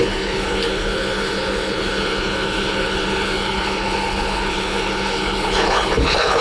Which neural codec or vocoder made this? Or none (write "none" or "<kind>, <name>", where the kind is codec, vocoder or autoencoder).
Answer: codec, HILCodec